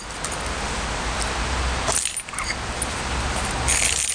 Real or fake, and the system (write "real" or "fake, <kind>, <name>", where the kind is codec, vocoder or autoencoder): real